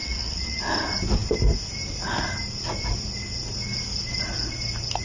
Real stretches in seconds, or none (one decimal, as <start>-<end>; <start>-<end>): 0.6-5.0